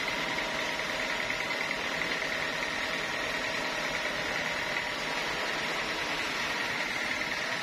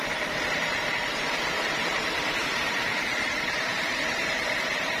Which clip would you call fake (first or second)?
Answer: second